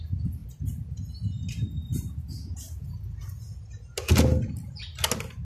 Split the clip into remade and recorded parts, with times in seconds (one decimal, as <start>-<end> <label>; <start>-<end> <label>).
0.0-5.4 recorded